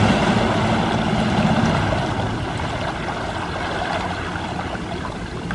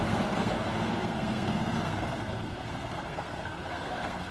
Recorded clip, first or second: first